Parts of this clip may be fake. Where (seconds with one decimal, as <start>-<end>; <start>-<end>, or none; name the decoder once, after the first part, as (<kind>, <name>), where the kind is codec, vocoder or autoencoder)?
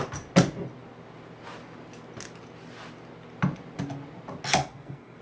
4.6-5.2 (codec, SNAC)